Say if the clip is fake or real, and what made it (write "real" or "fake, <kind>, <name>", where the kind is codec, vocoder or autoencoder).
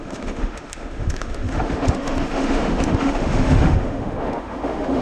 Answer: fake, autoencoder, DAC-VAE